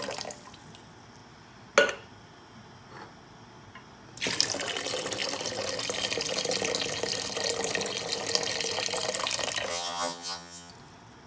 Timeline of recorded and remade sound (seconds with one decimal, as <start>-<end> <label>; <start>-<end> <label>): 0.0-9.7 recorded; 9.7-10.7 remade; 10.7-11.3 recorded